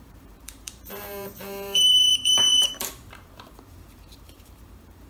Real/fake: fake